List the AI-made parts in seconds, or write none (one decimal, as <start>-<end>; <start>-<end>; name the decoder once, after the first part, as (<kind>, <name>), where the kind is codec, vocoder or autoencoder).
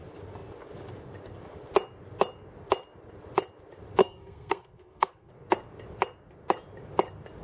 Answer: 4.0-5.3 (codec, SNAC)